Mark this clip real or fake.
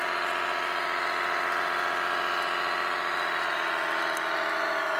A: real